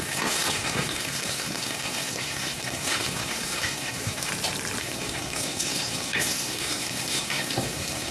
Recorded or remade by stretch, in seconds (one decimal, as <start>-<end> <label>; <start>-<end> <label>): 0.0-4.3 remade; 4.3-4.8 recorded; 4.8-8.1 remade